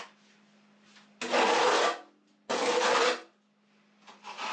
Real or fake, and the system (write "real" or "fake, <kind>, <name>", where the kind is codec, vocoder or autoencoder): real